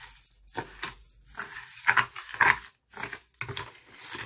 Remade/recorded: recorded